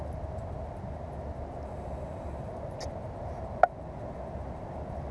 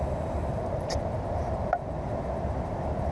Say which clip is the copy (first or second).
second